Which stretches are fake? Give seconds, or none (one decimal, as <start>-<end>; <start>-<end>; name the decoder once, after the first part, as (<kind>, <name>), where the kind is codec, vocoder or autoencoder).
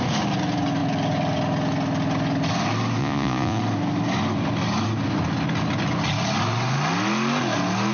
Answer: 3.0-3.6 (vocoder, Vocos)